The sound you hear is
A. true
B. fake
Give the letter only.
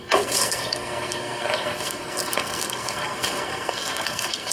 B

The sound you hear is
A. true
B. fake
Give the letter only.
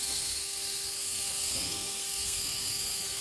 B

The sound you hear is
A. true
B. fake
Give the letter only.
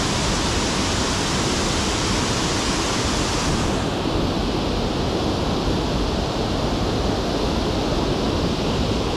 A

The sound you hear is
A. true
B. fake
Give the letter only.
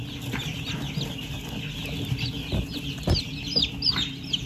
A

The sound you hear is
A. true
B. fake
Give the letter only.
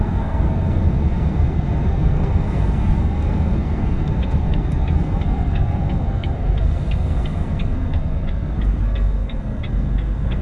B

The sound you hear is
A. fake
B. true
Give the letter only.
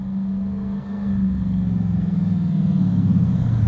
A